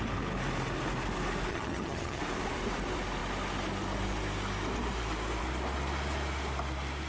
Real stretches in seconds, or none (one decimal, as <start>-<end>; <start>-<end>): 0.0-1.5; 2.2-7.1